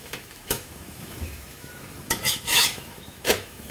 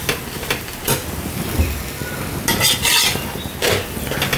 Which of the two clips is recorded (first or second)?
second